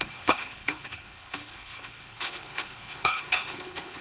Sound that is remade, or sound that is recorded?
remade